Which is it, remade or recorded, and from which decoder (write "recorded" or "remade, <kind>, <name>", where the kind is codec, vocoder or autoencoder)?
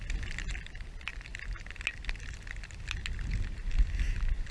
recorded